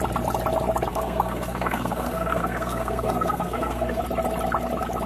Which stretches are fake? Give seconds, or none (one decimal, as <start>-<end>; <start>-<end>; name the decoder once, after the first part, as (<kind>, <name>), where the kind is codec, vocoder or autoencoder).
0.9-4.0 (codec, SNAC)